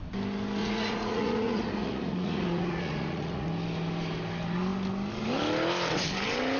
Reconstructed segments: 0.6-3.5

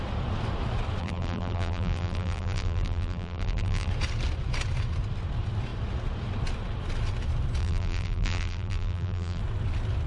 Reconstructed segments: 1.0-3.9; 7.6-9.4